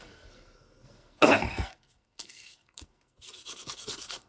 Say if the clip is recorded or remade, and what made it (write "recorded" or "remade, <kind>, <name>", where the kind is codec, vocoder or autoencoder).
remade, codec, SNAC